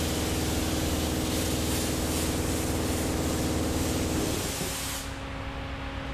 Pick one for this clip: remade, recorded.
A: recorded